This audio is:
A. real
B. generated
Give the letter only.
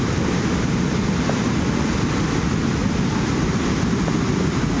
A